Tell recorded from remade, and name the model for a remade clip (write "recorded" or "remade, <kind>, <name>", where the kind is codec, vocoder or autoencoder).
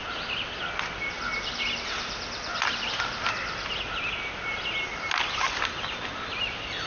recorded